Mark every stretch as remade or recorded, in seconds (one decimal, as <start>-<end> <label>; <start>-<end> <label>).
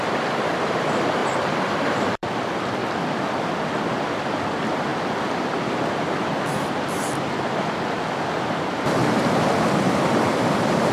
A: 0.0-2.8 remade; 2.8-3.9 recorded; 3.9-4.9 remade; 4.9-5.6 recorded; 5.6-9.0 remade; 9.0-9.9 recorded; 9.9-10.9 remade